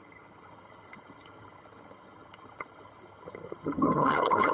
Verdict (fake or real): fake